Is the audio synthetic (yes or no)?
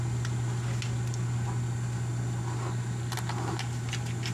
no